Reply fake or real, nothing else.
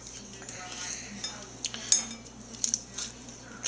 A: real